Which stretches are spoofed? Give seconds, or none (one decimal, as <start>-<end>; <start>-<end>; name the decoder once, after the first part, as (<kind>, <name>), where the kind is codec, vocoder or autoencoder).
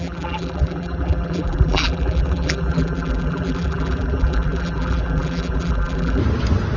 0.0-6.2 (vocoder, BigVGAN v2)